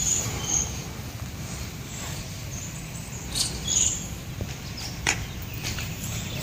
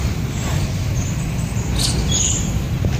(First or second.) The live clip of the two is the second